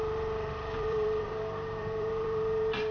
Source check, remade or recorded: remade